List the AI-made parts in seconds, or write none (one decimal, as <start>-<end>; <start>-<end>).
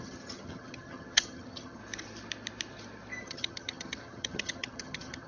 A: 0.0-1.8; 3.2-5.3